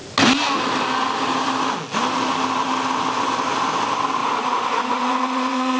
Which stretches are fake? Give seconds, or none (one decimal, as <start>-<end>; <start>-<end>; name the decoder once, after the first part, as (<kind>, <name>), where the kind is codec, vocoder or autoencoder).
4.2-5.8 (vocoder, Vocos)